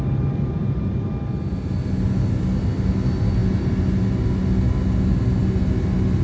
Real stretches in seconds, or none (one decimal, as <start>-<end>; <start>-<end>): 0.0-6.2